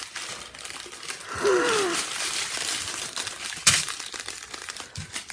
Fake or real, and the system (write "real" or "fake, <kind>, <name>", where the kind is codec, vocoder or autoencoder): real